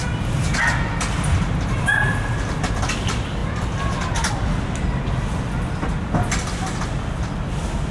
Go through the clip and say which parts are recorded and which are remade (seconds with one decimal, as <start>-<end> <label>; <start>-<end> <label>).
0.0-7.9 recorded